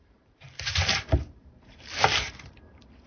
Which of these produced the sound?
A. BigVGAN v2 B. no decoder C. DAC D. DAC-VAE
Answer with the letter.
A